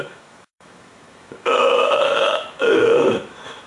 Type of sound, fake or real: fake